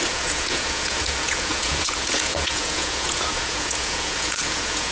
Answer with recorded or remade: remade